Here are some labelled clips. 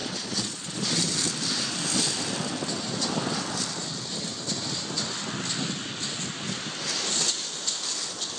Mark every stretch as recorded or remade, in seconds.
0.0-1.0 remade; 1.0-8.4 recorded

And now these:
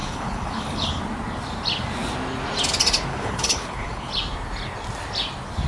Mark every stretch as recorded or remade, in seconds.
0.0-1.0 remade; 1.0-3.1 recorded; 3.1-4.1 remade; 4.1-5.7 recorded

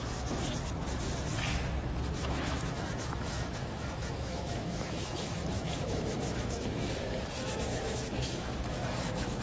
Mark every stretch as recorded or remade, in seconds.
0.0-2.2 recorded; 2.2-7.0 remade; 7.0-7.7 recorded; 7.7-9.4 remade

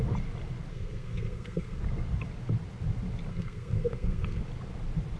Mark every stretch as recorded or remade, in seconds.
0.0-0.7 recorded; 0.7-1.8 remade; 1.8-3.3 recorded; 3.3-4.4 remade; 4.4-5.2 recorded

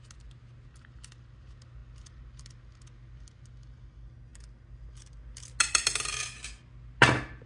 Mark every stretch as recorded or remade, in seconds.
0.0-7.5 recorded

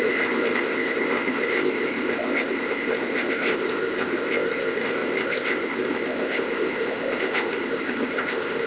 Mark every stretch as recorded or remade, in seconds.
0.0-8.7 remade

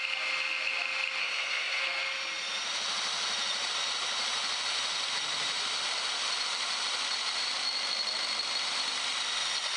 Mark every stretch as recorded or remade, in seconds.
0.0-1.2 recorded; 1.2-1.8 remade; 1.8-9.8 recorded

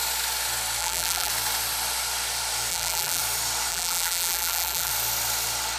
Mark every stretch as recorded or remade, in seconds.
0.0-0.8 recorded; 0.8-1.3 remade; 1.3-2.7 recorded; 2.7-3.2 remade; 3.2-3.7 recorded; 3.7-4.9 remade; 4.9-5.8 recorded